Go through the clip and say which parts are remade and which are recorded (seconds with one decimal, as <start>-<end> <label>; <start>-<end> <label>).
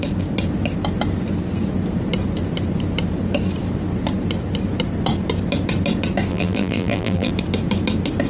0.0-6.3 recorded; 6.3-7.3 remade; 7.3-8.3 recorded